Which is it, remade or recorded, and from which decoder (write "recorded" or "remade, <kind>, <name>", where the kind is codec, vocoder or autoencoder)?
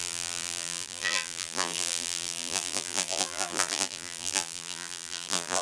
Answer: remade, vocoder, BigVGAN v2